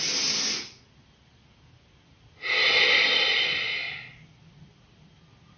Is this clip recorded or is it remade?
recorded